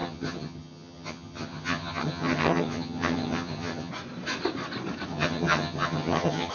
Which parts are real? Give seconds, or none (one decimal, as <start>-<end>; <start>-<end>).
3.9-5.1